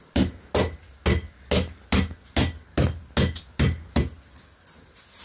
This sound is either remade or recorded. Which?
recorded